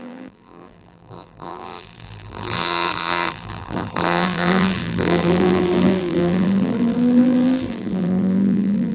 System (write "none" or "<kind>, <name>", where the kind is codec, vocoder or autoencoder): vocoder, BigVGAN v2